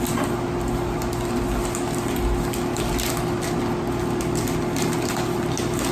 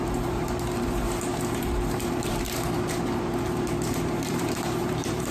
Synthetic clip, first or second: second